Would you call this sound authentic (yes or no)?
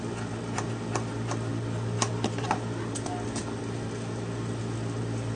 yes